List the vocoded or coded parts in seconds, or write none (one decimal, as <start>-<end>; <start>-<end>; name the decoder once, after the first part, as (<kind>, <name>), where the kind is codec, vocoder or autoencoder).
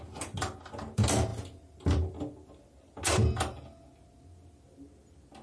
none